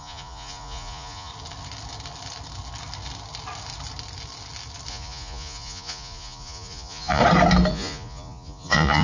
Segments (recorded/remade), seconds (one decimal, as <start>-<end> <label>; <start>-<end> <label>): 0.0-1.3 remade; 1.3-4.9 recorded; 4.9-7.2 remade; 7.2-7.7 recorded; 7.7-9.0 remade